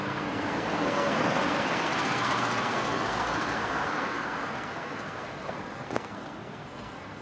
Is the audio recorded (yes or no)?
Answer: no